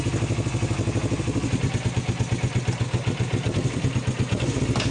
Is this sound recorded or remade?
recorded